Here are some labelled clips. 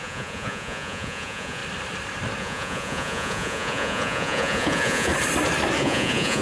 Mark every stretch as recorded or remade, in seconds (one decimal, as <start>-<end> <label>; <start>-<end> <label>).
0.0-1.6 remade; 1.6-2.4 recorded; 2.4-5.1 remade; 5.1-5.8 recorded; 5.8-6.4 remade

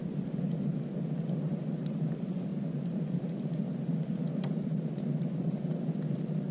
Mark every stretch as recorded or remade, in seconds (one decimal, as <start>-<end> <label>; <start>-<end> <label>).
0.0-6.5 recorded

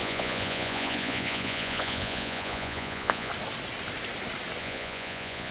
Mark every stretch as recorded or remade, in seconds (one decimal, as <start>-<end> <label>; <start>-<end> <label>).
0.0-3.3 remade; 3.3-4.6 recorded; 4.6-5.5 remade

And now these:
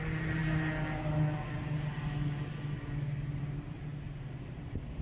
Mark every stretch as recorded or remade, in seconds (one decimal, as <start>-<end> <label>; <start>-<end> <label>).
0.0-5.0 recorded